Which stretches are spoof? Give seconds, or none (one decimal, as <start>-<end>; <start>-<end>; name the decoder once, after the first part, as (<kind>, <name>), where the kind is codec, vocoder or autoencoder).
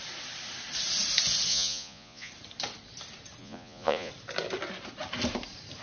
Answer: 1.5-2.3 (vocoder, Vocos); 3.4-4.1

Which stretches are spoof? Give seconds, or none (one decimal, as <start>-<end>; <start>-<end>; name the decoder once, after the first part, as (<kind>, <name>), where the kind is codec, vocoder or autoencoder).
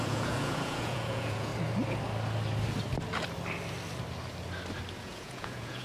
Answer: 0.0-1.5 (vocoder, Vocos); 5.0-5.8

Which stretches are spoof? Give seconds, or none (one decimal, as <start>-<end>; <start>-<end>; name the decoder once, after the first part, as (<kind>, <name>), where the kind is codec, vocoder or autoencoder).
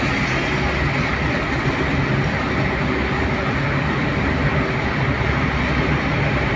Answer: none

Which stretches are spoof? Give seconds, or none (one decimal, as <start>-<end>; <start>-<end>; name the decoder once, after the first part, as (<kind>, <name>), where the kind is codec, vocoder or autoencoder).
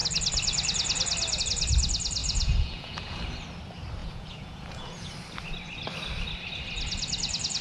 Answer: 2.2-3.2 (vocoder, Vocos); 4.0-5.1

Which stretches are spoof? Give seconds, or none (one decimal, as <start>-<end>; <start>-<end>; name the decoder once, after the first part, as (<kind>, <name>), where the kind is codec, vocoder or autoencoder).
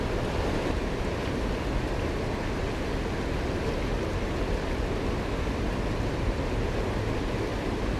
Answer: none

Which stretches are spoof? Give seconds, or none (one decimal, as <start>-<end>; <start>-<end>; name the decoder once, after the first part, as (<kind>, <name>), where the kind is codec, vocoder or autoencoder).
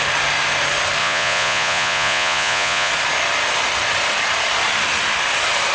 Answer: 1.0-2.9 (vocoder, Vocos)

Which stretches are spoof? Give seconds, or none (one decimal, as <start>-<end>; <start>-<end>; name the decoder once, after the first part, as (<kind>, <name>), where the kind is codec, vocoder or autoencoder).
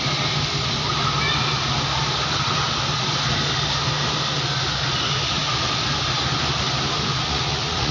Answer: 7.1-7.9 (vocoder, Vocos)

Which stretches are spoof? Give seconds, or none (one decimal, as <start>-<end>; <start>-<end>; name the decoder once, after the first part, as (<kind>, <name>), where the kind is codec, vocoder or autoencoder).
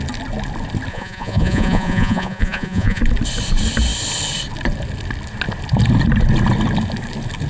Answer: 0.9-3.0 (vocoder, Vocos)